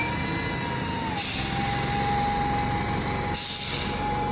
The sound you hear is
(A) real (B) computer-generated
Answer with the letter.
A